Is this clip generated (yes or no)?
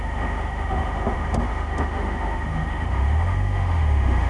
yes